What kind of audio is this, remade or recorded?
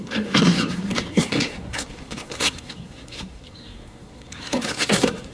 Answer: remade